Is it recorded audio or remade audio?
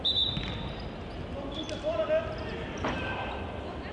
recorded